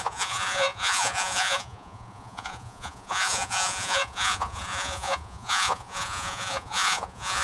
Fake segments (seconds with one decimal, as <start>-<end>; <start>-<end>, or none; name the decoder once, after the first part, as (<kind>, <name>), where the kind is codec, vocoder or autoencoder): 0.0-7.4 (vocoder, Vocos)